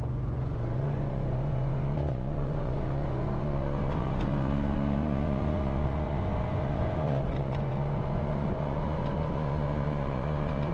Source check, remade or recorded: remade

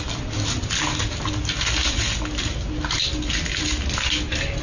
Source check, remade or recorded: recorded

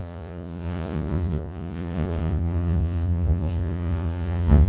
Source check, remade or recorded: remade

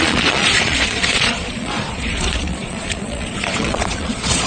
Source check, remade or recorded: remade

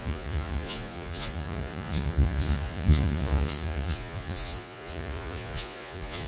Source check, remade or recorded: remade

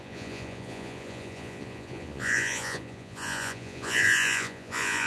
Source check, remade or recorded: remade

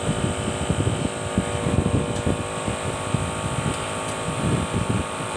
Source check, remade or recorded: recorded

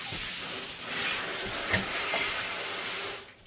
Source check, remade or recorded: recorded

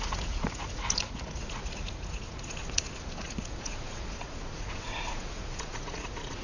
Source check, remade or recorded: remade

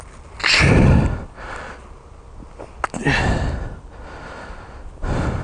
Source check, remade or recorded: recorded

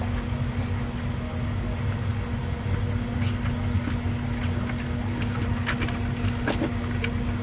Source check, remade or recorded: recorded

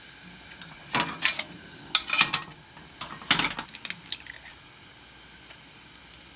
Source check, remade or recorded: recorded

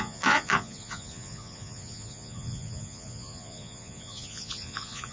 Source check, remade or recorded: remade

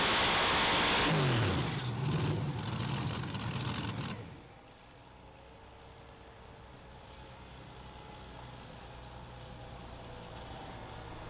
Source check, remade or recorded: recorded